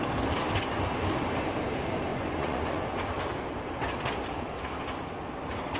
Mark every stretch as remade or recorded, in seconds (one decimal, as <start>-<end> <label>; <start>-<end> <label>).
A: 0.0-2.1 recorded; 2.1-3.1 remade; 3.1-5.8 recorded